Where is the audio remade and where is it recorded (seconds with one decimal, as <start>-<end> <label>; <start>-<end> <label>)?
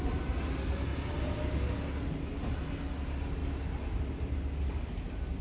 0.0-5.4 recorded